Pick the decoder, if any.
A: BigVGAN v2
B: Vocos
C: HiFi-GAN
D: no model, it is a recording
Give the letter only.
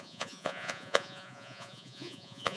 B